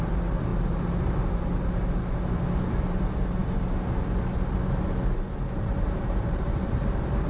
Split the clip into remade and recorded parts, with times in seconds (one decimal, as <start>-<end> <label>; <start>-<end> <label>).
0.0-5.7 recorded; 5.7-7.3 remade